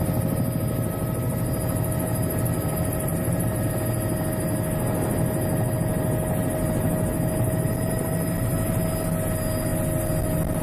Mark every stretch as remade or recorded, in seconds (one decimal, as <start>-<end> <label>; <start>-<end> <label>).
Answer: 0.0-3.1 recorded; 3.1-3.7 remade; 3.7-10.6 recorded